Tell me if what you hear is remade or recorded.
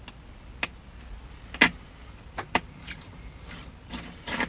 recorded